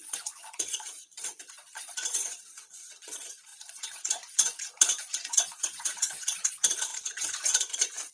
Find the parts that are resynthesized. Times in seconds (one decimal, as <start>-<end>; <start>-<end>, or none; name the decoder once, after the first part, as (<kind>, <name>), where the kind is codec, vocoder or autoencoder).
0.0-8.1 (vocoder, Vocos)